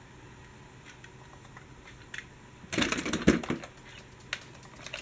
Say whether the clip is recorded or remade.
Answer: recorded